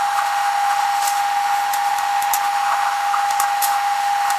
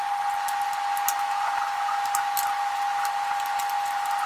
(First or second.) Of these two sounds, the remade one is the first